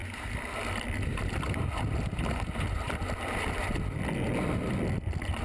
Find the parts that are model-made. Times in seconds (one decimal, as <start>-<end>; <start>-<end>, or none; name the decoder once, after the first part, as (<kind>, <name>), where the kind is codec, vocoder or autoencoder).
none